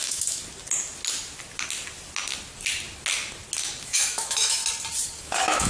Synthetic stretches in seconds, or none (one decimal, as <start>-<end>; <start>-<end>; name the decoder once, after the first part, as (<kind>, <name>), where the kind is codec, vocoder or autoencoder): 0.0-0.4 (autoencoder, DAC-VAE); 3.8-4.6; 5.2-5.7